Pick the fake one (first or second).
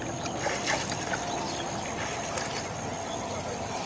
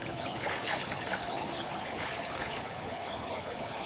second